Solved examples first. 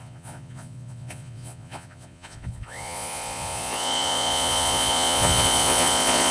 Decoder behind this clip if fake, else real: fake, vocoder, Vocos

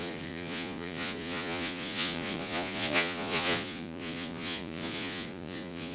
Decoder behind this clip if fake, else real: fake, vocoder, Vocos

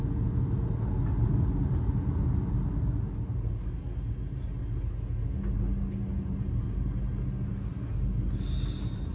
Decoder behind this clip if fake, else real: real